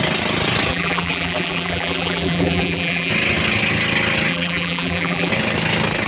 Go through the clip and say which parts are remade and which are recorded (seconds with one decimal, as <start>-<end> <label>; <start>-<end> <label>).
0.0-0.7 recorded; 0.7-3.1 remade; 3.1-4.3 recorded; 4.3-5.3 remade; 5.3-6.1 recorded